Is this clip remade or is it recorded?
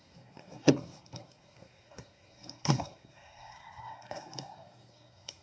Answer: remade